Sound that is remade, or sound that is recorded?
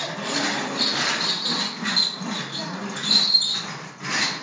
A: recorded